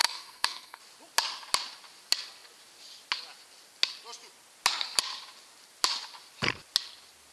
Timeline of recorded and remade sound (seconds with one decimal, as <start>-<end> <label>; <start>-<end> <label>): 0.0-0.8 remade; 0.8-7.3 recorded